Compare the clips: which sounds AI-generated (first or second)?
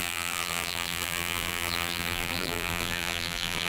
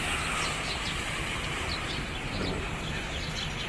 first